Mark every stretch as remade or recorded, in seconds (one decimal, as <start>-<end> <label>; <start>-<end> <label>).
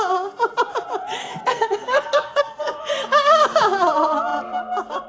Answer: 0.0-1.2 recorded; 1.2-2.8 remade; 2.8-5.1 recorded